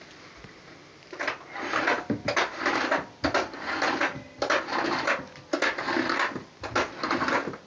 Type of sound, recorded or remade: recorded